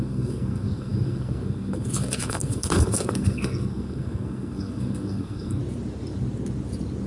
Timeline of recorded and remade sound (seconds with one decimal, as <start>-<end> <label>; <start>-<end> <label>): 0.0-5.6 remade; 5.6-7.1 recorded